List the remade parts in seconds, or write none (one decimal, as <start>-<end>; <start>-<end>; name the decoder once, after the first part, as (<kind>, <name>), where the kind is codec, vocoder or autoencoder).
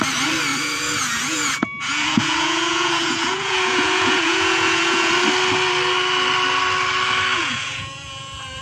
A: 0.5-5.1 (vocoder, Vocos); 7.3-8.6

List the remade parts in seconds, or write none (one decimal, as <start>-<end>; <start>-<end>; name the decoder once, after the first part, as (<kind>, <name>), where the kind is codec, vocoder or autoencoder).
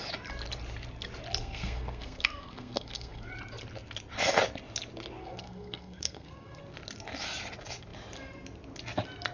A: 1.4-3.3 (codec, SNAC); 5.2-6.6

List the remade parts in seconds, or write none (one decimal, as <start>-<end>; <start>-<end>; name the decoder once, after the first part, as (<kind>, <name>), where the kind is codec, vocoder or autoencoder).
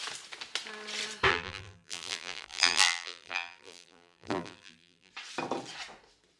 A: 1.3-5.1 (vocoder, BigVGAN v2)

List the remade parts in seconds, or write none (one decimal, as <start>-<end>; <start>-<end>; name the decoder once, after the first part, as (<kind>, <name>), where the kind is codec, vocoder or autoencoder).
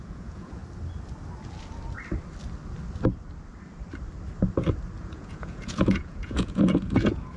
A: 0.0-0.6 (vocoder, Vocos); 5.0-7.4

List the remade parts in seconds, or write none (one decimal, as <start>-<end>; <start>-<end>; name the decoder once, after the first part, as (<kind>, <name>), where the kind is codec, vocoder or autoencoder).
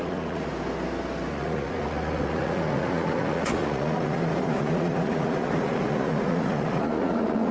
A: 0.0-0.5 (vocoder, Vocos); 1.3-7.5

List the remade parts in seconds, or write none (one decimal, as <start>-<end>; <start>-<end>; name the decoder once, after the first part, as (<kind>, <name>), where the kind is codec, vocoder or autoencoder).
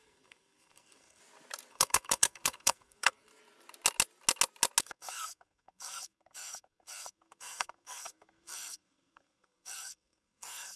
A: 0.0-1.2 (codec, SNAC); 1.7-3.3; 4.8-10.8